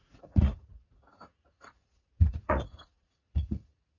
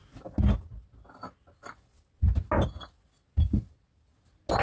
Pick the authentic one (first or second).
second